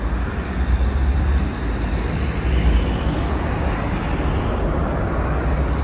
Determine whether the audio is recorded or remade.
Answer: recorded